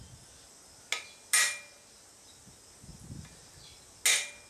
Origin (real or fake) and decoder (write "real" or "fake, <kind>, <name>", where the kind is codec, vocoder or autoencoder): real